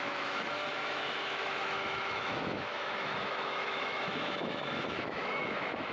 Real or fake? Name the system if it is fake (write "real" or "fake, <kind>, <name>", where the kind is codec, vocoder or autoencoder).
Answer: fake, autoencoder, DAC-VAE